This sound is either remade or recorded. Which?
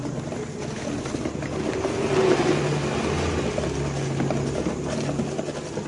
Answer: recorded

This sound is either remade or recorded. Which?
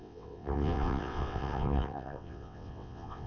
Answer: remade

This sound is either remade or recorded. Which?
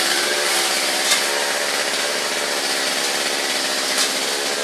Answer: recorded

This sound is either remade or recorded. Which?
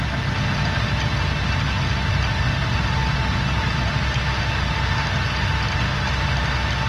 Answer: recorded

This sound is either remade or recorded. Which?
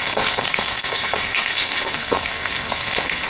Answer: remade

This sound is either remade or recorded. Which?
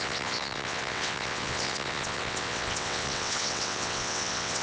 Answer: remade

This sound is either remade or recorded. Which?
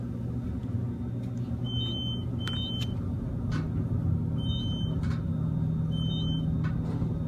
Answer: recorded